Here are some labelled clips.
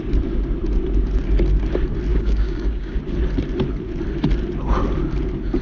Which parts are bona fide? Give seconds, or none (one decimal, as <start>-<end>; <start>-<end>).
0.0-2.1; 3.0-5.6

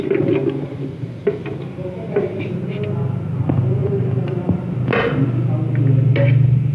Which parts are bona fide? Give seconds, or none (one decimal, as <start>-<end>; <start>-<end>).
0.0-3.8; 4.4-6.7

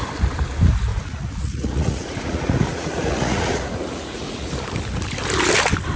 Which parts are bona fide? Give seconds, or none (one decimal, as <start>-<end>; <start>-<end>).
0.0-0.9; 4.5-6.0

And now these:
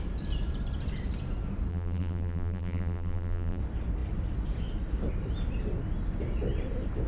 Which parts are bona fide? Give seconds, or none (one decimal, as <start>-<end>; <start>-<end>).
0.0-1.7; 3.6-7.1

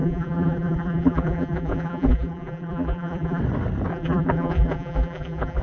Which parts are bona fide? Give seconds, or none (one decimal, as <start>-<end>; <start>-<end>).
3.4-3.9

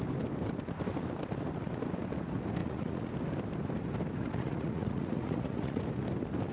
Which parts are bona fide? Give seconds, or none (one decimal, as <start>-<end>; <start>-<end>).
0.0-2.6; 3.1-4.2; 5.8-6.5

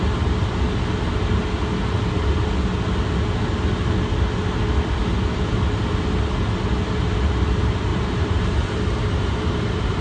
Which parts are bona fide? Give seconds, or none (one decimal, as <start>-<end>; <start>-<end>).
0.0-7.9